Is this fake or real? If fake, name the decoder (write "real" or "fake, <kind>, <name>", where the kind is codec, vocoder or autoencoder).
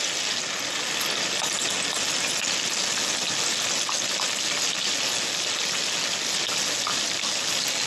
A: real